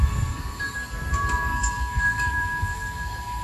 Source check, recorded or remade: remade